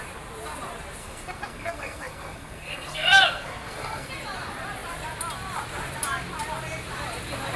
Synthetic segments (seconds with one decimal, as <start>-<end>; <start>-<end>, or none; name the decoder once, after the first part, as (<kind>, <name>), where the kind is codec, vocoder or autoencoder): 1.0-4.1 (codec, SNAC)